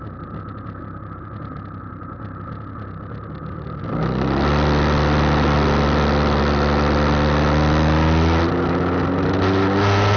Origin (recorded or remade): recorded